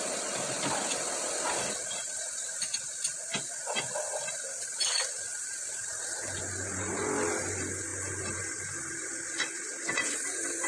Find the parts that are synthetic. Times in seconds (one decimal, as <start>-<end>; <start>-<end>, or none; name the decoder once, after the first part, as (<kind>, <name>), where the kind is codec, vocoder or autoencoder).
none